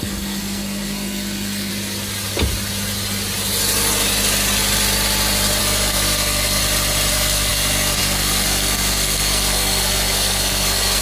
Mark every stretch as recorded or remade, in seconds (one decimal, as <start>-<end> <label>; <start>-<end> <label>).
0.0-1.7 remade; 1.7-5.6 recorded; 5.6-6.6 remade; 6.6-7.1 recorded; 7.1-11.0 remade